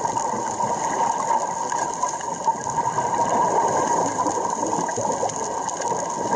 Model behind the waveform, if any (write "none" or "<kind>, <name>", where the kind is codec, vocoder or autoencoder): none